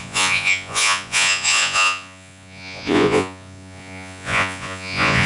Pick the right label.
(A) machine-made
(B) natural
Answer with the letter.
A